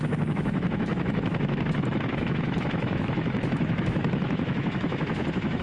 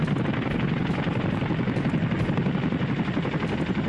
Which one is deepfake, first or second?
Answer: first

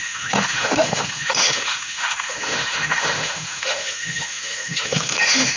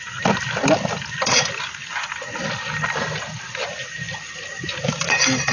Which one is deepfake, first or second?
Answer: first